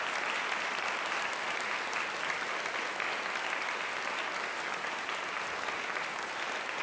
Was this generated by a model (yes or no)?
no